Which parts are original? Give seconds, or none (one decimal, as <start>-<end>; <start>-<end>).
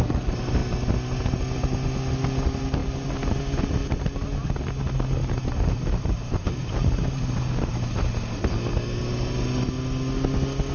0.0-5.2; 8.1-10.7